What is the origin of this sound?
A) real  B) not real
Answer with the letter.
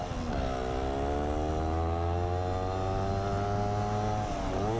A